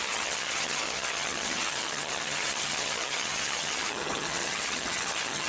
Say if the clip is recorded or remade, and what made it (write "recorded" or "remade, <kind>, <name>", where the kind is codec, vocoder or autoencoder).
remade, vocoder, HiFi-GAN